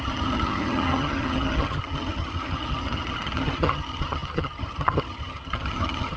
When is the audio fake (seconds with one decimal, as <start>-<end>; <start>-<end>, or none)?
0.0-6.2